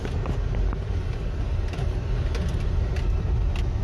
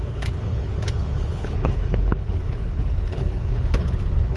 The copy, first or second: second